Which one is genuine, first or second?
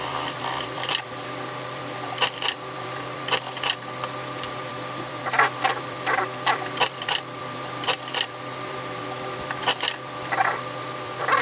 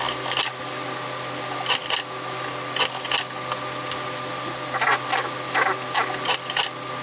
second